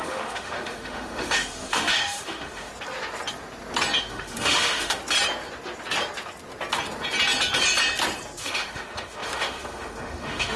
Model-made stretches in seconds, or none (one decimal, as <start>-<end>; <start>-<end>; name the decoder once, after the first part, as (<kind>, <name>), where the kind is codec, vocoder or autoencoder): 0.0-2.7 (autoencoder, DAC-VAE); 4.0-5.0; 8.4-10.6